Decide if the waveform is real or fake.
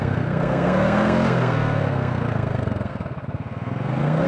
fake